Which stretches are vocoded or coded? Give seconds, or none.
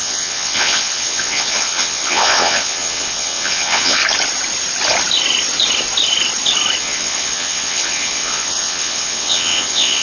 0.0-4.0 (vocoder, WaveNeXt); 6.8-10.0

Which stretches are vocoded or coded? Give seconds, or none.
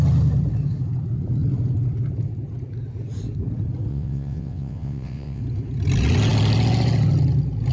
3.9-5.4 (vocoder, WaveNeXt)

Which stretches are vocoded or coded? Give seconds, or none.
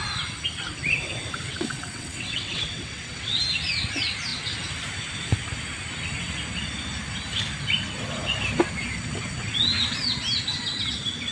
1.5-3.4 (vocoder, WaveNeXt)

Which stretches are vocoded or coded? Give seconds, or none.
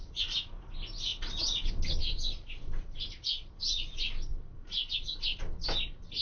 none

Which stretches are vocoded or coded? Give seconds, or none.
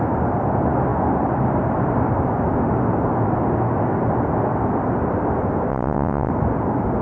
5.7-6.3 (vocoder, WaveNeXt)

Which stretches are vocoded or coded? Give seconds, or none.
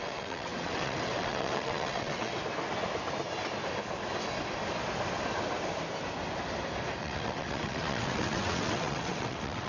0.0-2.3 (vocoder, WaveNeXt); 7.0-9.7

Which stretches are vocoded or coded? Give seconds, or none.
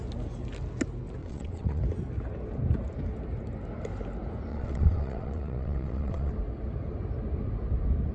1.2-1.8 (vocoder, WaveNeXt); 4.5-6.3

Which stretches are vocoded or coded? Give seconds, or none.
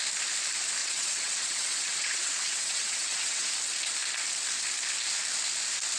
0.8-3.5 (vocoder, WaveNeXt)